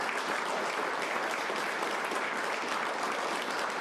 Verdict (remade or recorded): recorded